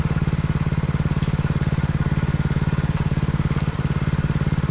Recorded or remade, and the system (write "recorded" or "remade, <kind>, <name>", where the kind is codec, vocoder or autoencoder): recorded